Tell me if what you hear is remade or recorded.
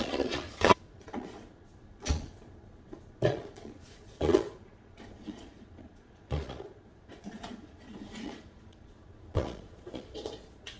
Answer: remade